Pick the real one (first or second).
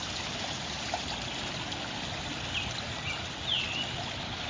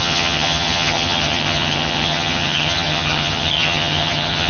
first